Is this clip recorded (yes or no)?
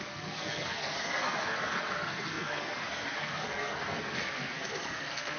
no